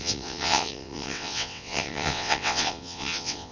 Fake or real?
fake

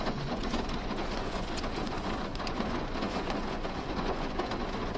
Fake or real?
fake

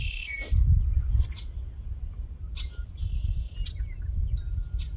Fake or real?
real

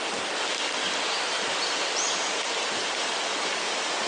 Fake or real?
real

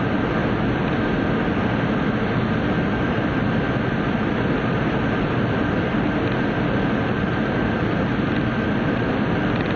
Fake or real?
real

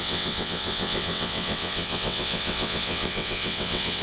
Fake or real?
fake